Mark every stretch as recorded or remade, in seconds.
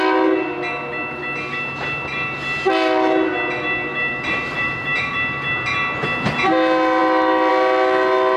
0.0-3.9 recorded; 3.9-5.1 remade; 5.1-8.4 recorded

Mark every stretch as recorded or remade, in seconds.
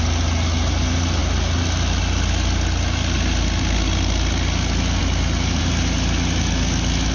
0.0-7.1 recorded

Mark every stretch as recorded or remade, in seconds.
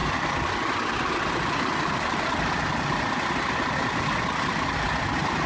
0.0-3.3 recorded; 3.3-5.5 remade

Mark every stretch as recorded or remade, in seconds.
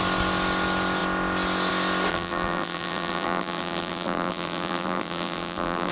0.0-2.1 recorded; 2.1-5.9 remade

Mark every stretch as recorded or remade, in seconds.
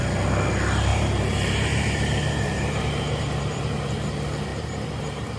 0.0-0.9 recorded; 0.9-4.1 remade; 4.1-4.5 recorded; 4.5-5.4 remade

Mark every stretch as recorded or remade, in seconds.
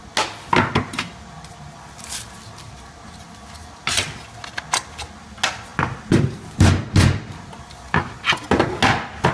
0.0-5.7 recorded; 5.7-6.7 remade; 6.7-9.3 recorded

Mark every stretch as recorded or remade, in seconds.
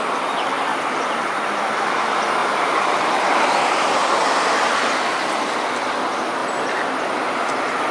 0.0-0.7 recorded; 0.7-1.5 remade; 1.5-2.4 recorded; 2.4-3.3 remade; 3.3-7.9 recorded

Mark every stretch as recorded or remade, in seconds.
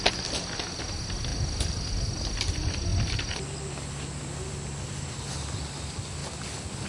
0.0-6.9 recorded